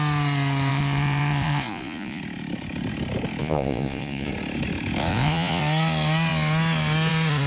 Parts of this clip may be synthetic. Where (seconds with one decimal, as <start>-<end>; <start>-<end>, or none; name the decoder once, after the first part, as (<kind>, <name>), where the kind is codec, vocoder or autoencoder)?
0.7-2.2 (vocoder, Vocos); 3.4-4.3; 5.1-5.6